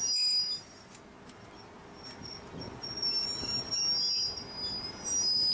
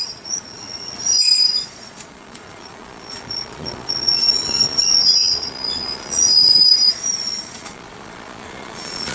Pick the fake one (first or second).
second